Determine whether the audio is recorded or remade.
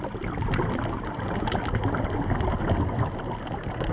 recorded